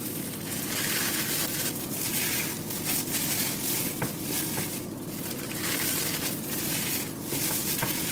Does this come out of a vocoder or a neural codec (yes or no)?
no